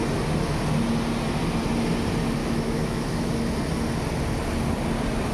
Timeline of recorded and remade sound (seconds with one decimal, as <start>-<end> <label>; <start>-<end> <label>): 0.0-2.4 recorded; 2.4-3.3 remade; 3.3-5.3 recorded